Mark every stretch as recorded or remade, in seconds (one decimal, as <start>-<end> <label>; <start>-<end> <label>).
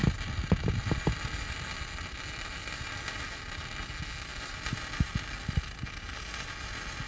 0.0-0.9 remade; 0.9-4.3 recorded; 4.3-5.1 remade; 5.1-7.1 recorded